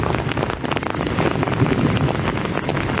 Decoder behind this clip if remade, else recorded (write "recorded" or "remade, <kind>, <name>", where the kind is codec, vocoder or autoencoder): recorded